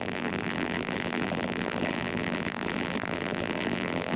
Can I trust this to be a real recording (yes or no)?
no